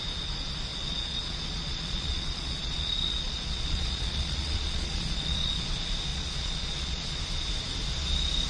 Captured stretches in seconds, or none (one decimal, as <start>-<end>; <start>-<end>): 0.0-0.7; 5.6-6.1; 7.2-8.5